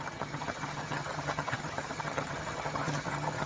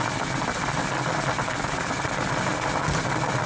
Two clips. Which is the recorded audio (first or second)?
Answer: second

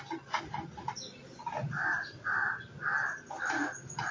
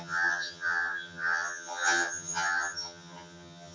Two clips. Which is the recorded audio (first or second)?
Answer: first